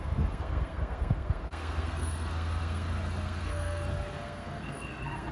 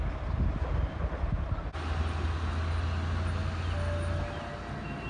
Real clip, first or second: second